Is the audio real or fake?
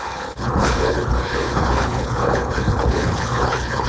fake